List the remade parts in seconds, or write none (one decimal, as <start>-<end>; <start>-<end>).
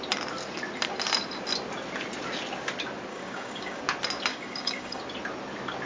3.1-3.8; 4.3-5.0